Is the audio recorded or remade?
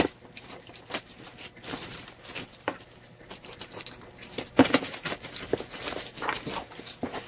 remade